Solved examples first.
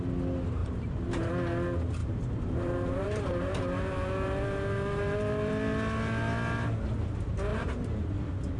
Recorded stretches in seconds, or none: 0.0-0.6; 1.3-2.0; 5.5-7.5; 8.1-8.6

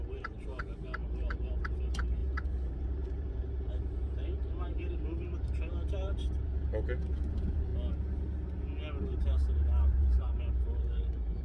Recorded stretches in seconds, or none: 6.7-7.3; 7.7-9.0

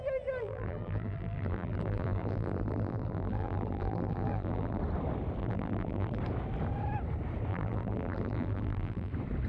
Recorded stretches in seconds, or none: 0.0-0.4; 4.8-5.4; 6.2-7.5; 9.1-9.5

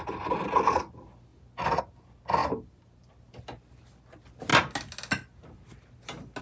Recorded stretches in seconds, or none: 0.0-1.3; 1.8-2.4; 3.1-6.4

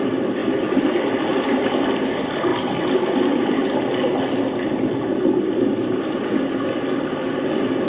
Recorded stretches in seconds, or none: 0.0-0.4; 1.3-2.5; 3.2-7.9

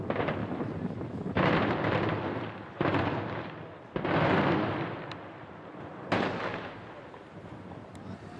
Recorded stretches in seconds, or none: 0.0-0.4; 2.5-2.9; 5.4-6.5; 7.3-8.4